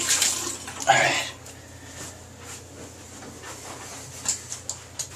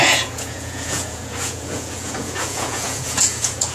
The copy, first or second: second